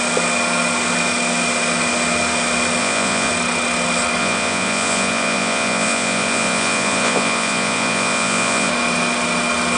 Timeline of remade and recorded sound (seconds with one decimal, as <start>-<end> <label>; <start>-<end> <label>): 0.0-2.8 recorded; 2.8-3.3 remade; 3.3-4.2 recorded; 4.2-8.7 remade; 8.7-9.8 recorded